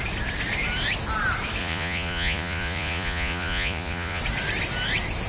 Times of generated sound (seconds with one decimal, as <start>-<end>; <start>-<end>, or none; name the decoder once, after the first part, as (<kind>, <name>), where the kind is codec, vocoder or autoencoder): 1.6-4.2 (vocoder, Vocos)